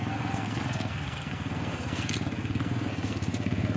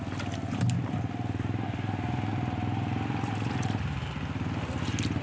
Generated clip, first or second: first